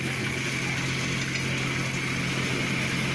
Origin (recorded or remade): recorded